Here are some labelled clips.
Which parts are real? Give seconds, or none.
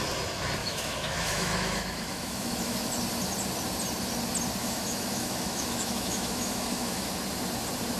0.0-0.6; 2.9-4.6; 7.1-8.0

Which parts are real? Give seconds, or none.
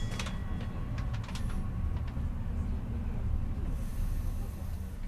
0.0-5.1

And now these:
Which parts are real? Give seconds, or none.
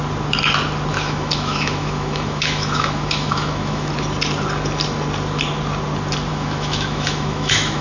0.0-0.9; 3.9-6.3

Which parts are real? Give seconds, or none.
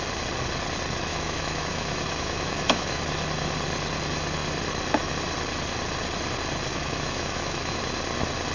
0.0-1.1; 3.0-6.7; 7.8-8.5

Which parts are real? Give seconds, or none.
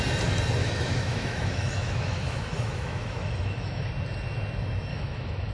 0.0-0.6; 3.9-4.9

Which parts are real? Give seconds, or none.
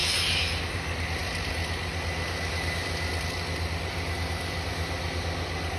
0.0-5.8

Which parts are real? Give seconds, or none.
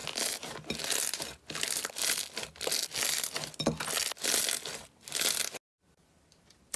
0.0-6.8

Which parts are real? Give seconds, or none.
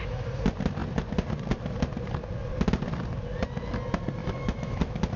0.0-4.2; 4.8-5.2